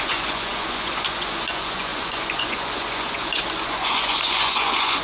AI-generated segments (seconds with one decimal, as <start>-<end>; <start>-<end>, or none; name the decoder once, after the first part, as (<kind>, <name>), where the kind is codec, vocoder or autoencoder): 0.0-5.0 (vocoder, Vocos)

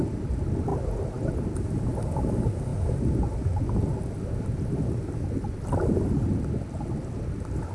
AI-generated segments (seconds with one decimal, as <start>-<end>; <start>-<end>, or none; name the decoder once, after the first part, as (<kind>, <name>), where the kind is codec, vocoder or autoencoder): none

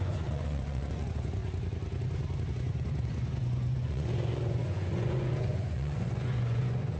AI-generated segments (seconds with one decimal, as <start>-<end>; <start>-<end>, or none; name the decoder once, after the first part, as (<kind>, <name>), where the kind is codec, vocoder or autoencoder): 0.0-1.4 (vocoder, Vocos); 2.5-7.0

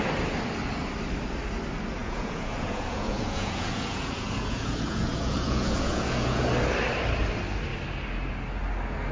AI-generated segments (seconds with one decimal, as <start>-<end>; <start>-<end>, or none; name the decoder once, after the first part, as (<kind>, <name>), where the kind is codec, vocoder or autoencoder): 2.0-6.5 (vocoder, Vocos)

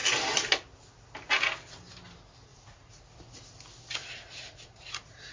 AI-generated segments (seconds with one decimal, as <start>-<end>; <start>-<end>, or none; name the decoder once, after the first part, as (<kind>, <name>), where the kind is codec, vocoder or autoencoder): 2.5-3.0 (vocoder, Vocos); 4.0-5.3

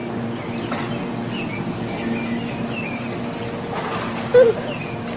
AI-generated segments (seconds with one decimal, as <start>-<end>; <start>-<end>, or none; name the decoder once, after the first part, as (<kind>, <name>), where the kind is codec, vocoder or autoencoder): none